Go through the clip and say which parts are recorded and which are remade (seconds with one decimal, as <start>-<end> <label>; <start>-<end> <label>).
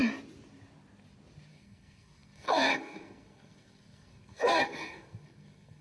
0.0-1.5 recorded; 1.5-5.8 remade